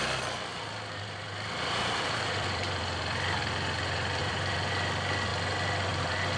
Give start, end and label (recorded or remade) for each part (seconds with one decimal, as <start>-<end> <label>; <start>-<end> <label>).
0.0-0.5 recorded; 0.5-2.8 remade; 2.8-4.2 recorded; 4.2-4.7 remade; 4.7-6.4 recorded